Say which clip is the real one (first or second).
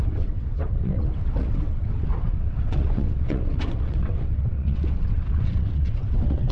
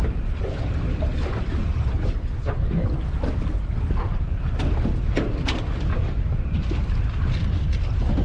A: second